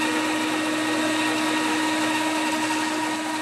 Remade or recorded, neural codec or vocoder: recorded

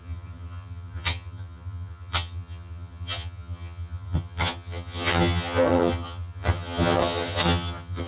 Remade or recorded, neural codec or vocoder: remade, vocoder, HiFi-GAN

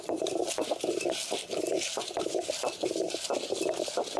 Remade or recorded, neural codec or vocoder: remade, vocoder, BigVGAN v2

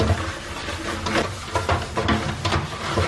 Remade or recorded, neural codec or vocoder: recorded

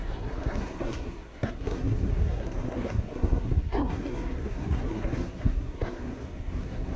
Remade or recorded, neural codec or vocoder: remade, codec, SNAC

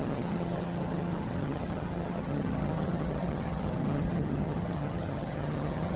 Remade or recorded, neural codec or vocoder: remade, vocoder, HiFi-GAN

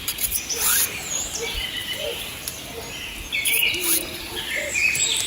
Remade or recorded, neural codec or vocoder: recorded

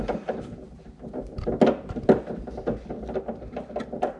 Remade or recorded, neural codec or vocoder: recorded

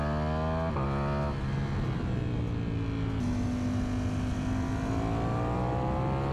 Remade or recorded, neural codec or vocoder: recorded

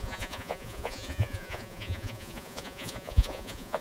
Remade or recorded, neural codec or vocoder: remade, vocoder, Vocos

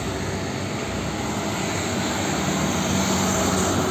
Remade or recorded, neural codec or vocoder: recorded